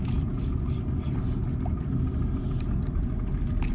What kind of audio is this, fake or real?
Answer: real